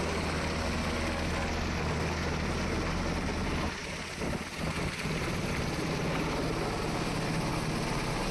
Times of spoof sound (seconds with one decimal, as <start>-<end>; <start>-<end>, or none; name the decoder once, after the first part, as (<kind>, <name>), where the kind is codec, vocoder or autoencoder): none